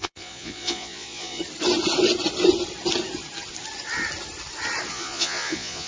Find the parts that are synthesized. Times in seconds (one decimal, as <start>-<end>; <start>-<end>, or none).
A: 0.0-1.4; 4.9-5.9